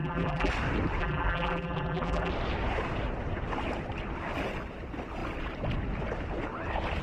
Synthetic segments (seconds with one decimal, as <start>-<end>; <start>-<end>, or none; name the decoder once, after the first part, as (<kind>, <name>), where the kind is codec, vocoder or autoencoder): 0.0-0.5 (vocoder, BigVGAN v2); 1.0-2.3